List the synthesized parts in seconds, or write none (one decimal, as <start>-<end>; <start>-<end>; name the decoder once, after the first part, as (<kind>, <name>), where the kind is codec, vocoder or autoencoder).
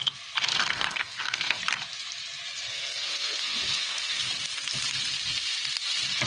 0.5-1.6 (codec, SNAC); 2.7-4.3